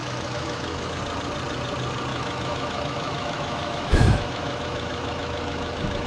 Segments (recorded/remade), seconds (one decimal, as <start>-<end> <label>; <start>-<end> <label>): 0.0-1.0 remade; 1.0-2.1 recorded; 2.1-6.1 remade